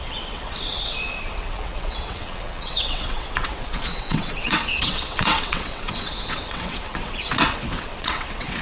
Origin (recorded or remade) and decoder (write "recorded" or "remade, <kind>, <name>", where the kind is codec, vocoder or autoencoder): remade, vocoder, WaveNeXt